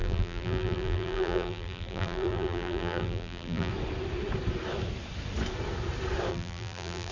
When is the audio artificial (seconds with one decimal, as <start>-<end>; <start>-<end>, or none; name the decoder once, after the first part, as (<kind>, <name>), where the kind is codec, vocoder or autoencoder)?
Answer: 0.0-3.7 (vocoder, BigVGAN v2); 6.3-7.1